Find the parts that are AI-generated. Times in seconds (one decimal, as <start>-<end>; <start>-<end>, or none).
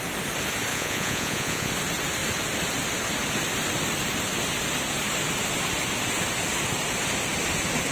0.7-1.7